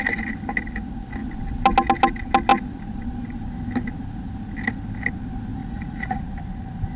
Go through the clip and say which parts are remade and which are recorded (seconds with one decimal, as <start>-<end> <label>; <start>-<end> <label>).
0.0-5.6 recorded; 5.6-6.2 remade; 6.2-7.0 recorded